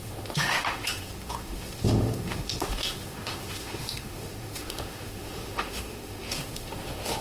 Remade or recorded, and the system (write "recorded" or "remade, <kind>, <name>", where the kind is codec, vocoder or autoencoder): remade, autoencoder, DAC-VAE